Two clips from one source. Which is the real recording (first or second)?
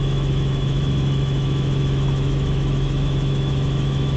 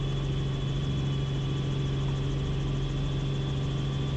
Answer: second